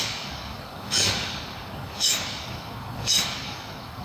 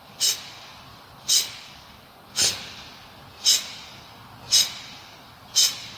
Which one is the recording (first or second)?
second